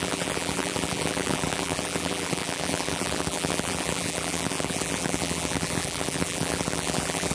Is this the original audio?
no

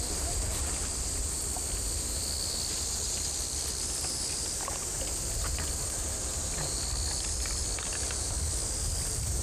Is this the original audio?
yes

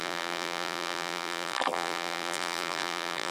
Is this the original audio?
no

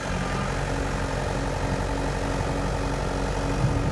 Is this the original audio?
yes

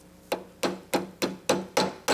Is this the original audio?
yes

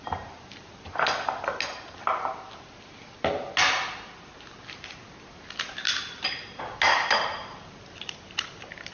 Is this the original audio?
yes